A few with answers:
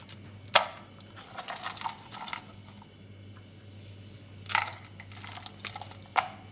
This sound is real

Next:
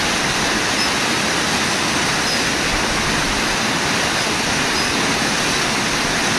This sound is real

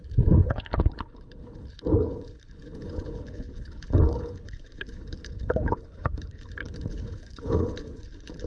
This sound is fake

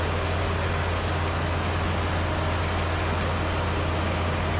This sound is real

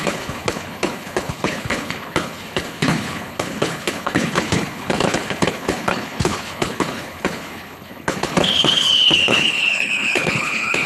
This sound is fake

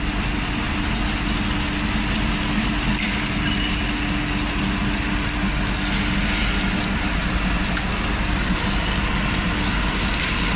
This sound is real